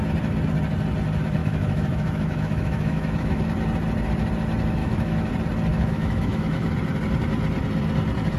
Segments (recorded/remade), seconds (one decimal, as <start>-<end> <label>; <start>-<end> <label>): 0.0-1.4 recorded; 1.4-3.4 remade; 3.4-4.8 recorded; 4.8-5.3 remade; 5.3-5.7 recorded; 5.7-6.7 remade; 6.7-8.4 recorded